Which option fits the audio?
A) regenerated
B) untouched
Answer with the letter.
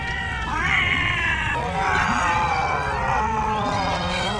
A